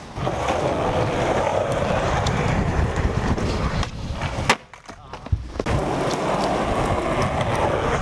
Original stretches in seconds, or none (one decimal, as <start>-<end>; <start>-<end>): 0.0-1.5; 4.1-8.0